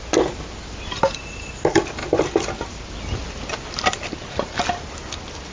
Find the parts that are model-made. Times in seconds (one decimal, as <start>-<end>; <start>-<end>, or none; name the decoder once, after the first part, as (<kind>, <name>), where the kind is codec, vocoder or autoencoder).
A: none